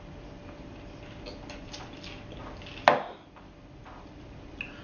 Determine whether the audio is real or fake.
real